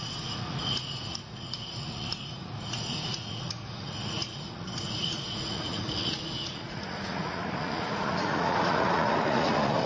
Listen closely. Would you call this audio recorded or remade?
remade